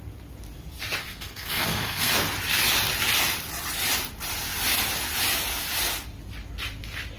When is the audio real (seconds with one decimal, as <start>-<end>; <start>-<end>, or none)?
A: 0.0-1.0; 2.1-7.2